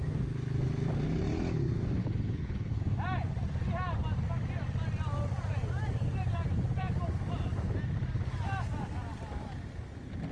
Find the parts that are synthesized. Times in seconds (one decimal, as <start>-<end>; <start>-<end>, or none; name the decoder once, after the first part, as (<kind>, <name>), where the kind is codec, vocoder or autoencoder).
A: 2.0-2.8 (codec, HILCodec)